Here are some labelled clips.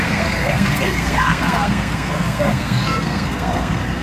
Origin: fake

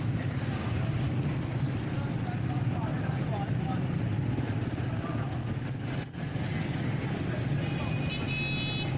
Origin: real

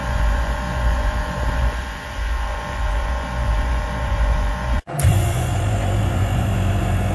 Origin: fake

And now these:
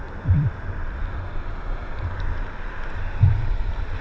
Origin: real